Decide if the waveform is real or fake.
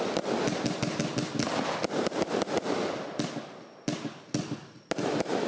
real